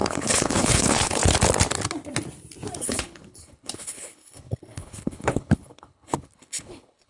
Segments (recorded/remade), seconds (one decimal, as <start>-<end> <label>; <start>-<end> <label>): 0.0-1.2 remade; 1.2-2.8 recorded; 2.8-7.1 remade

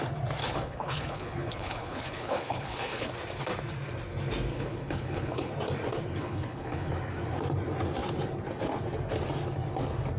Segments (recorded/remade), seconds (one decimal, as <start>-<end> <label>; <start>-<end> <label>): 0.0-0.4 recorded; 0.4-3.1 remade; 3.1-4.5 recorded; 4.5-5.5 remade; 5.5-6.2 recorded; 6.2-6.9 remade; 6.9-10.2 recorded

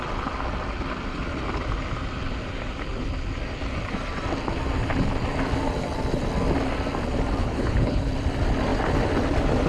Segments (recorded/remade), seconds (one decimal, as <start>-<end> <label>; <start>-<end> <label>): 0.0-7.4 recorded; 7.4-8.1 remade; 8.1-9.7 recorded

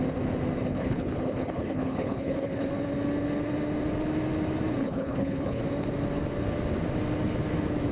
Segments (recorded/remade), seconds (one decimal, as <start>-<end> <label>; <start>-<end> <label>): 0.0-0.7 recorded; 0.7-2.7 remade; 2.7-4.8 recorded; 4.8-5.6 remade; 5.6-7.9 recorded

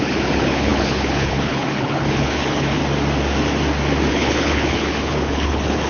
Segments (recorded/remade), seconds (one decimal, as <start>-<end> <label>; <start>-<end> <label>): 0.0-2.8 remade; 2.8-4.1 recorded; 4.1-5.9 remade

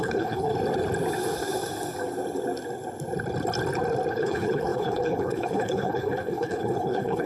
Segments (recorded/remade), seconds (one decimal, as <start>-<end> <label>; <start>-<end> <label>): 0.0-0.5 remade; 0.5-4.1 recorded; 4.1-7.3 remade